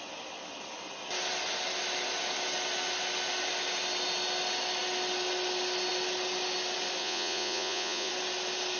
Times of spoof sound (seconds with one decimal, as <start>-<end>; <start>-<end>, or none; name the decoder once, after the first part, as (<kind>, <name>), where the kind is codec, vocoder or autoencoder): 7.0-8.1 (vocoder, Vocos)